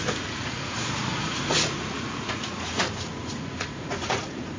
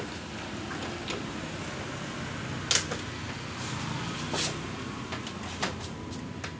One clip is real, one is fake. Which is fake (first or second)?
first